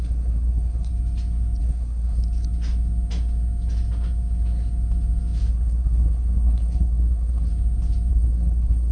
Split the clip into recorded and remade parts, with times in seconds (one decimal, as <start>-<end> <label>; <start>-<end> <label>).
0.0-0.9 remade; 0.9-1.6 recorded; 1.6-2.2 remade; 2.2-5.5 recorded; 5.5-7.5 remade; 7.5-8.1 recorded; 8.1-8.9 remade